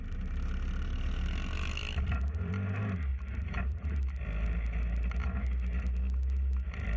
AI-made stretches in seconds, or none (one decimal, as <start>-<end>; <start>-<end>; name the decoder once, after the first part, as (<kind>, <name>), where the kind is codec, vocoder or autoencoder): 1.8-2.5 (vocoder, BigVGAN v2); 3.1-3.9